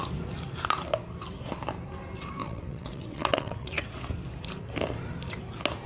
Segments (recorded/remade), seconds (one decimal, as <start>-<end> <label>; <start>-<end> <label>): 0.0-2.4 recorded; 2.4-3.8 remade; 3.8-5.9 recorded